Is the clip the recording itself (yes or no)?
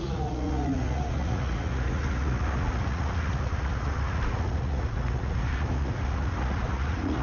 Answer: no